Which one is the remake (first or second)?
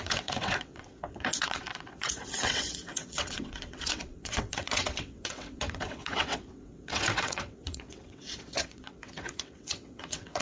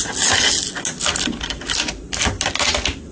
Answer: first